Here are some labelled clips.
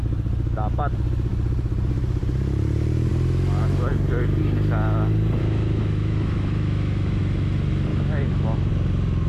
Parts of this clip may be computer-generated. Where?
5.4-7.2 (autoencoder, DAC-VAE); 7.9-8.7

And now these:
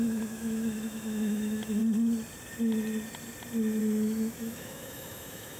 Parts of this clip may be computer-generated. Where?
0.0-1.8 (autoencoder, DAC-VAE); 3.8-5.6